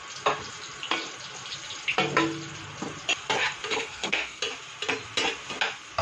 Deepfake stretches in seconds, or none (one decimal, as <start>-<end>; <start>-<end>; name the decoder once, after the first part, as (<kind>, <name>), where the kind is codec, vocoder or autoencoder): 3.7-4.4 (codec, SNAC)